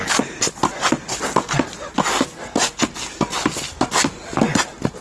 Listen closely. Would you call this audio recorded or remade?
recorded